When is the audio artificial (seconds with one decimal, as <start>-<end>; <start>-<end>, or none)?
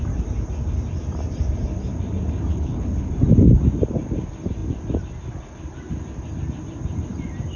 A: 2.5-3.1